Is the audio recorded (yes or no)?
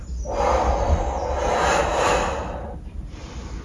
yes